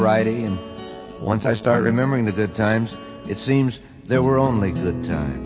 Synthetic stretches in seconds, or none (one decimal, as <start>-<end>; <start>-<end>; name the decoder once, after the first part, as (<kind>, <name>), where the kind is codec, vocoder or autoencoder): 0.9-1.9 (vocoder, BigVGAN v2)